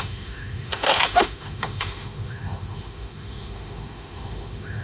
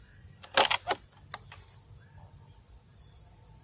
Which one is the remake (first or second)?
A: first